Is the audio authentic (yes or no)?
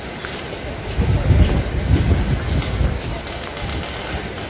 yes